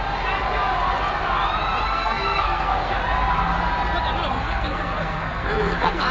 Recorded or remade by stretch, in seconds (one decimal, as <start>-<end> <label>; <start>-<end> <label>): 0.0-1.9 recorded; 1.9-3.0 remade; 3.0-4.4 recorded; 4.4-6.1 remade